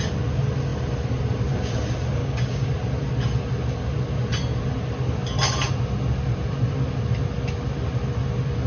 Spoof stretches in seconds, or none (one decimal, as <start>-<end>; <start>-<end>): 2.2-2.7